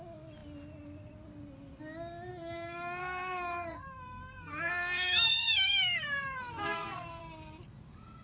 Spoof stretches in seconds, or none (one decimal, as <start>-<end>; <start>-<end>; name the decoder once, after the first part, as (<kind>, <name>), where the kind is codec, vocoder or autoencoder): 2.3-7.2 (codec, SNAC)